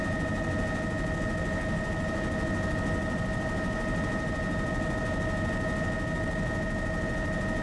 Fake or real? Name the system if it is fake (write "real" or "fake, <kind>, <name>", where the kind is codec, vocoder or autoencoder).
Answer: real